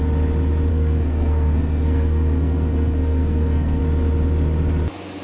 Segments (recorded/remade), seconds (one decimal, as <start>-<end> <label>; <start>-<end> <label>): 0.0-0.7 recorded; 0.7-3.8 remade; 3.8-5.2 recorded

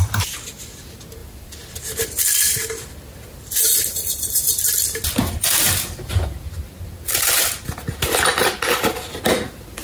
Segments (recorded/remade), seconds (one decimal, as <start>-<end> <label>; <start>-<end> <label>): 0.0-1.2 recorded; 1.2-6.1 remade; 6.1-9.8 recorded

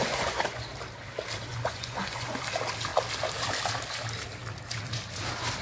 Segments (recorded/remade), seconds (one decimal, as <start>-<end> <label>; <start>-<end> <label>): 0.0-0.6 remade; 0.6-1.5 recorded; 1.5-2.4 remade; 2.4-5.6 recorded

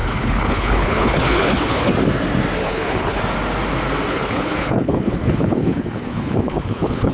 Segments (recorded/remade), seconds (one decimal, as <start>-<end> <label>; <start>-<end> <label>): 0.0-1.9 remade; 1.9-2.6 recorded; 2.6-3.2 remade; 3.2-4.1 recorded; 4.1-7.1 remade

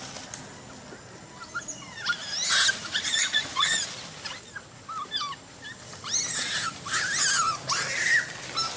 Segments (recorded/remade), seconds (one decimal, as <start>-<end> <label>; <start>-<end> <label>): 0.0-2.8 recorded; 2.8-3.8 remade; 3.8-8.8 recorded

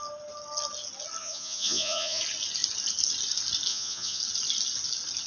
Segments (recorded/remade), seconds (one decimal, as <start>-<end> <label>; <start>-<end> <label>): 0.0-1.2 recorded; 1.2-2.2 remade; 2.2-3.7 recorded; 3.7-4.2 remade; 4.2-5.3 recorded